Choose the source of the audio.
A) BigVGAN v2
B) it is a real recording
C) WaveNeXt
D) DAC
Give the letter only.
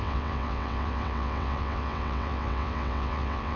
C